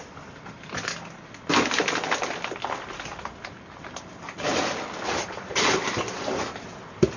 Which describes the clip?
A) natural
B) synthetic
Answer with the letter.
A